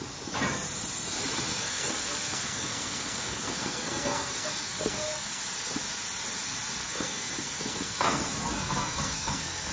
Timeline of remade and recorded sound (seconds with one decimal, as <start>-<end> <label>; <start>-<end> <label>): 0.0-1.5 recorded; 1.5-5.4 remade; 5.4-6.8 recorded; 6.8-9.7 remade